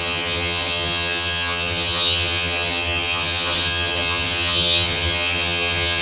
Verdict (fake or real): fake